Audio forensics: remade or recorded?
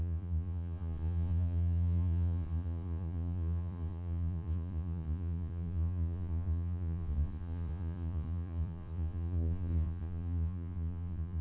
remade